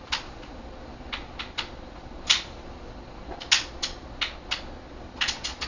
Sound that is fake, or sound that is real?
real